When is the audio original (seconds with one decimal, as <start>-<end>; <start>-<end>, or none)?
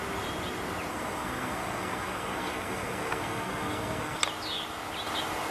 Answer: 0.0-0.9; 4.2-5.5